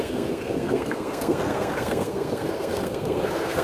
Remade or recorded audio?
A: remade